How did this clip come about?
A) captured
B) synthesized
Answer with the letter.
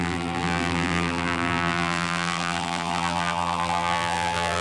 B